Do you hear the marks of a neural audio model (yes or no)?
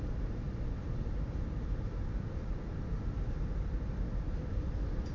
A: yes